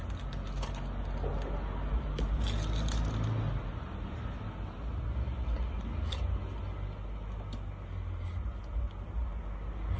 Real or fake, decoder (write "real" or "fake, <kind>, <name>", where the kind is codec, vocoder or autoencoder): real